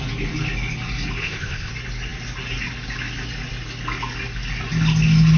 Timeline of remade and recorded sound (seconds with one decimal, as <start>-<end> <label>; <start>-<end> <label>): 0.0-1.2 recorded; 1.2-1.7 remade; 1.7-5.4 recorded